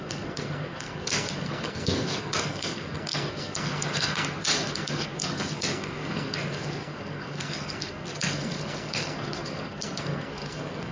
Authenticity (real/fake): fake